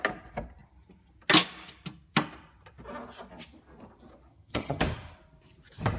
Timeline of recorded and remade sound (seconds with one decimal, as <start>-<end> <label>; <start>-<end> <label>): 0.0-4.3 recorded; 4.3-4.8 remade; 4.8-6.0 recorded